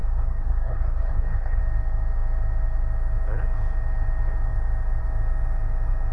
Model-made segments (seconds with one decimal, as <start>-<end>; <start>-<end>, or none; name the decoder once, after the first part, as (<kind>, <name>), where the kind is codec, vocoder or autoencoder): 0.0-1.6 (codec, SNAC)